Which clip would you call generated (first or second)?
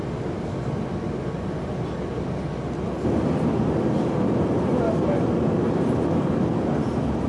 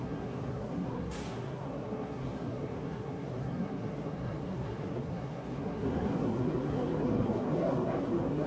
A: second